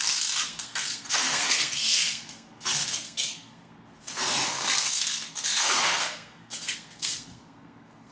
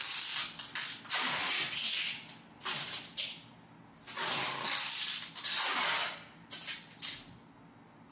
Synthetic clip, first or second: first